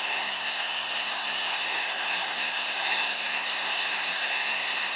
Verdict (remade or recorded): remade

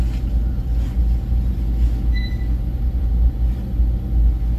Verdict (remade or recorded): recorded